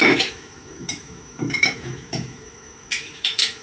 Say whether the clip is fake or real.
fake